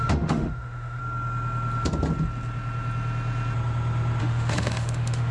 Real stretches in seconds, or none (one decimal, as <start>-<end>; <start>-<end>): 1.0-4.2